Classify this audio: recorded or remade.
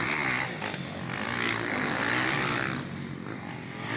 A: recorded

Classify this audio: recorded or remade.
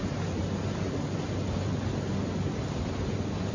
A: recorded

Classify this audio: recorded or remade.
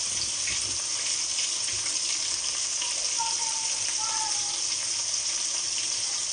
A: recorded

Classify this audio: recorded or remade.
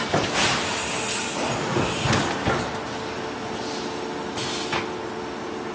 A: recorded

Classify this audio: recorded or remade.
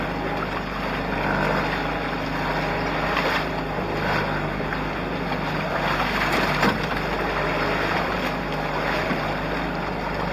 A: recorded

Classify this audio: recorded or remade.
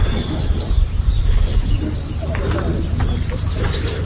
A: recorded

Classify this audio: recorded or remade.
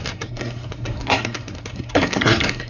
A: remade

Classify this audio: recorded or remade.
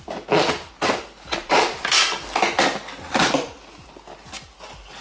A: recorded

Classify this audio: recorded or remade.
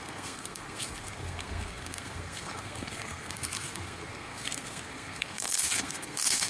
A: remade